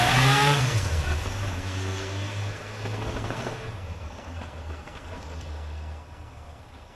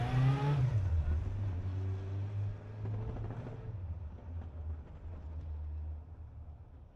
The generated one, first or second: first